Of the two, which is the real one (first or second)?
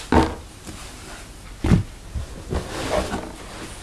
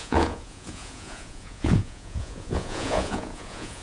first